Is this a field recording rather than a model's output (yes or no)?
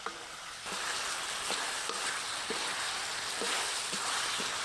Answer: yes